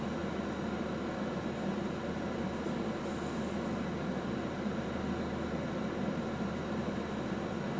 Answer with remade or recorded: recorded